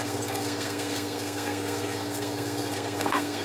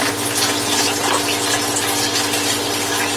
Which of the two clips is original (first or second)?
second